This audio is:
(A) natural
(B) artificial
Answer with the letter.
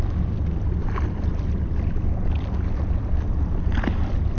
A